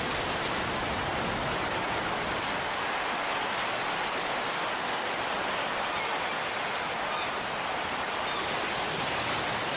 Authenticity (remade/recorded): recorded